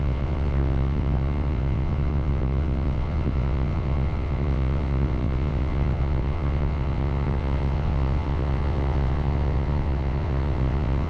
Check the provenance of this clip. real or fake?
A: fake